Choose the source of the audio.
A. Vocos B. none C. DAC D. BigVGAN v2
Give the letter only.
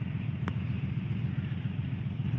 D